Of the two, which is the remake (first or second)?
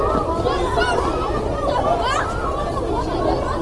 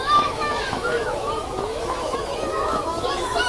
second